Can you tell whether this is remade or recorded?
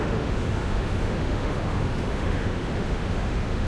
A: remade